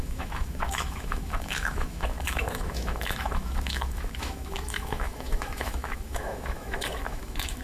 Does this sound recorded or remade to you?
remade